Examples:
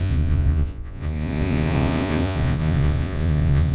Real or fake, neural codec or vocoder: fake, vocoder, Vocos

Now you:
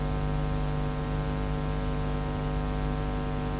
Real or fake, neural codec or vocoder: real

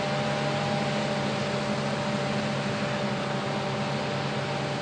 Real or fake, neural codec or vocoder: real